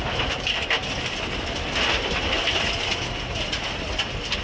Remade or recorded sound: recorded